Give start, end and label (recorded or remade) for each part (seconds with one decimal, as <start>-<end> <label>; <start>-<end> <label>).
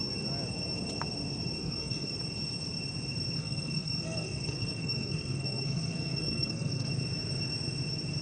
0.0-1.6 recorded; 1.6-2.1 remade; 2.1-3.4 recorded; 3.4-6.9 remade; 6.9-8.2 recorded